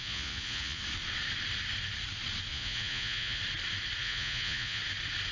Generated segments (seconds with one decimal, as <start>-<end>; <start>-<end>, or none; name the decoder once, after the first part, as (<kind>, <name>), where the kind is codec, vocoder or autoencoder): 0.0-0.8 (vocoder, Vocos); 2.5-3.4; 4.0-4.8